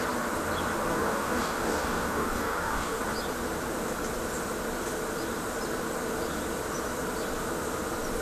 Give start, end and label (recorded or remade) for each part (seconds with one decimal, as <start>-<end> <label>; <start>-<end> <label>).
0.0-0.9 recorded; 0.9-3.0 remade; 3.0-8.2 recorded